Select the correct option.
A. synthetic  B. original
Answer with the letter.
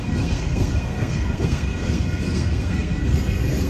A